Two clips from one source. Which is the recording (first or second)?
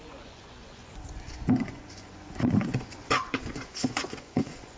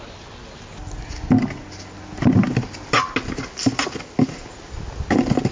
second